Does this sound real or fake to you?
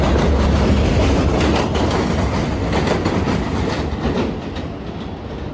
real